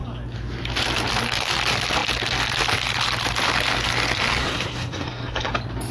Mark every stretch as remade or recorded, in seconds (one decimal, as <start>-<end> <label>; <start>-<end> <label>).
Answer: 0.0-4.4 recorded; 4.4-5.5 remade; 5.5-5.9 recorded